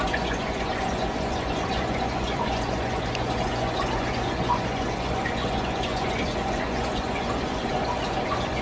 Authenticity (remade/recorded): remade